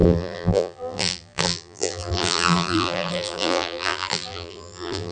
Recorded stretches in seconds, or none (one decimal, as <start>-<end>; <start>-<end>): none